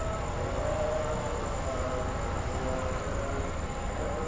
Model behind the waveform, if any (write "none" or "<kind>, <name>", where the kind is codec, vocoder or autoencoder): none